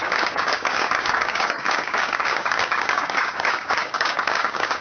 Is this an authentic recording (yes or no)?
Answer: no